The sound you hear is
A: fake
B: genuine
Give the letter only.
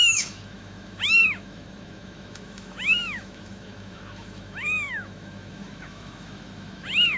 A